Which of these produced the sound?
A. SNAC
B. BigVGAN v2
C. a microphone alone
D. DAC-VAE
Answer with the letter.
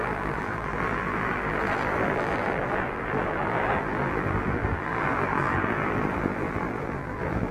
B